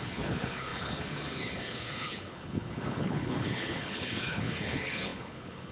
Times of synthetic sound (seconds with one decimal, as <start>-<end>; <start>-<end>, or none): 0.0-5.7